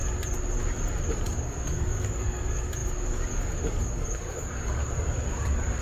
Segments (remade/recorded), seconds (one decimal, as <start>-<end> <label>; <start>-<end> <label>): 0.0-1.1 recorded; 1.1-4.8 remade; 4.8-5.8 recorded